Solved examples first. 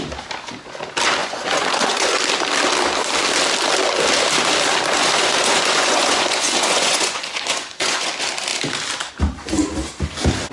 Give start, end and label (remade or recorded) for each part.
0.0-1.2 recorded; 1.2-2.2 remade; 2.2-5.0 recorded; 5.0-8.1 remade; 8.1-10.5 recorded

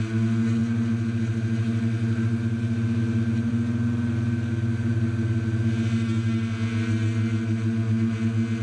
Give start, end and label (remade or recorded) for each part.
0.0-8.6 recorded

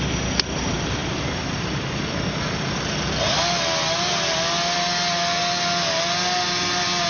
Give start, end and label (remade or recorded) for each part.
0.0-7.1 recorded

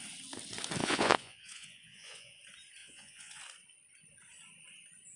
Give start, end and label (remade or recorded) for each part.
0.0-0.8 recorded; 0.8-2.4 remade; 2.4-2.8 recorded; 2.8-3.4 remade; 3.4-5.2 recorded